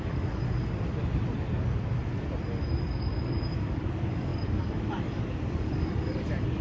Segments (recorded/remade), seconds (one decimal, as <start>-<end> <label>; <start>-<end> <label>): 0.0-0.4 remade; 0.4-2.8 recorded; 2.8-6.6 remade